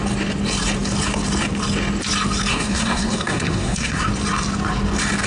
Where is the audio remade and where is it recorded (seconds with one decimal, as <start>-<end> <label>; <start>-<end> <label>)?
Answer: 0.0-2.5 recorded; 2.5-4.1 remade; 4.1-5.3 recorded